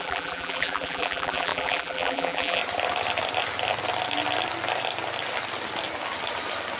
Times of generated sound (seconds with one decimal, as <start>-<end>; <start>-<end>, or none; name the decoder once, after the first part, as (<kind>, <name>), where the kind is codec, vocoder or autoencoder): 0.0-2.6 (vocoder, BigVGAN v2)